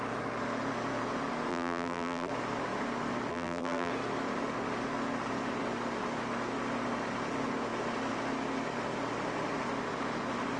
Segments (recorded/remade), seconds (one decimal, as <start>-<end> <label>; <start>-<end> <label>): 0.0-1.5 recorded; 1.5-2.3 remade; 2.3-3.3 recorded; 3.3-3.9 remade; 3.9-10.6 recorded